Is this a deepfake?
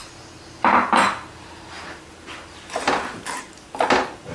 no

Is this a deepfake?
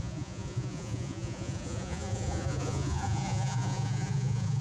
yes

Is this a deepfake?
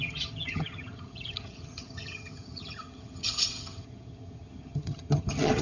yes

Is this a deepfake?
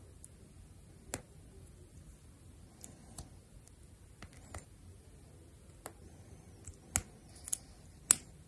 no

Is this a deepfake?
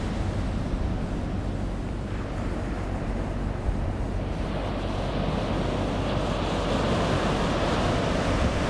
no